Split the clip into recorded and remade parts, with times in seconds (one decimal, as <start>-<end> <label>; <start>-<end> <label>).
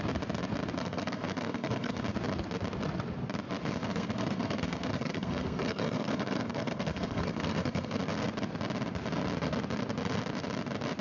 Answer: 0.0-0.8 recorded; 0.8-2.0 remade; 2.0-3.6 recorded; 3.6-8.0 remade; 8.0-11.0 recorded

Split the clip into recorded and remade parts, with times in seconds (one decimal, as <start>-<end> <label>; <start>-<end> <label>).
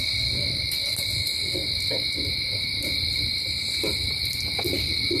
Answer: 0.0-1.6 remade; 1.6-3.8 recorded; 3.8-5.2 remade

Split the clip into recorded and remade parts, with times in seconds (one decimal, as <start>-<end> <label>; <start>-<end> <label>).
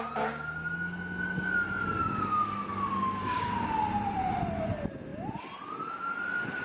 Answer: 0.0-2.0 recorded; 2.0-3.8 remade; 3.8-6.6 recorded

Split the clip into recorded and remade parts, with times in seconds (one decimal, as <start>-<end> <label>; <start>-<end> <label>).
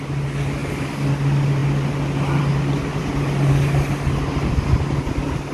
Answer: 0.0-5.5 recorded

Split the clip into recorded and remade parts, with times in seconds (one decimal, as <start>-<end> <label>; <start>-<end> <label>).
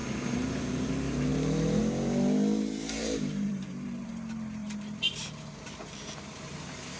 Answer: 0.0-0.9 remade; 0.9-3.0 recorded; 3.0-4.1 remade; 4.1-4.6 recorded; 4.6-5.4 remade; 5.4-7.0 recorded